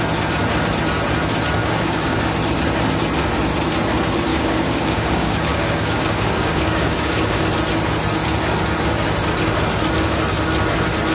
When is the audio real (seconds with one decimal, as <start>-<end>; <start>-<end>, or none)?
0.0-1.6; 2.2-4.3; 7.4-11.1